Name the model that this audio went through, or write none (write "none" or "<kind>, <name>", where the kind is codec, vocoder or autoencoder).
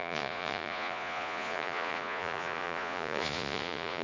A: vocoder, Vocos